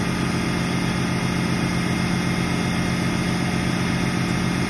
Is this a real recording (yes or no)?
yes